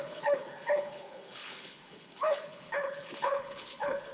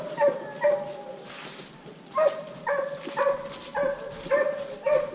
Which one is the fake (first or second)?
first